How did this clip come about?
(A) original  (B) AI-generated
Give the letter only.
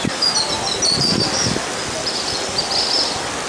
A